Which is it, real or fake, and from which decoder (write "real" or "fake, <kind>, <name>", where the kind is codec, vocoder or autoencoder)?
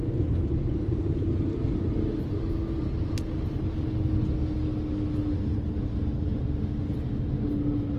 real